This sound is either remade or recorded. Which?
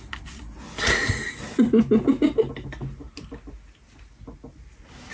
recorded